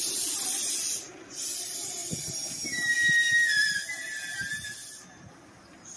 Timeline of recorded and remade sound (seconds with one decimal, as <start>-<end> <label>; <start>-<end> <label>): 0.0-6.0 recorded